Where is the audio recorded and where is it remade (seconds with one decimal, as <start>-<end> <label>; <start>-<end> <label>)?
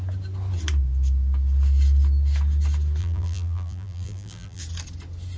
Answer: 0.0-3.0 recorded; 3.0-4.6 remade; 4.6-5.4 recorded